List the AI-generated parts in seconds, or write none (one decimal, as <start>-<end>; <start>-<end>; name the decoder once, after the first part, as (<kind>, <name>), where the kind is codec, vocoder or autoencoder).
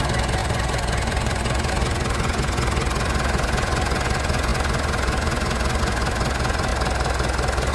0.0-6.7 (vocoder, Vocos)